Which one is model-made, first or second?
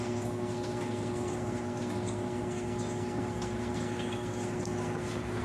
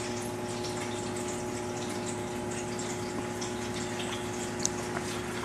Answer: first